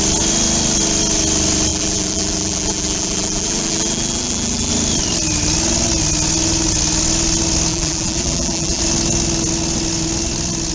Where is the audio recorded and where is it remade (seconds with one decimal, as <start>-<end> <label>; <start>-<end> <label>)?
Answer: 0.0-1.7 recorded; 1.7-4.7 remade; 4.7-7.7 recorded; 7.7-8.8 remade; 8.8-10.7 recorded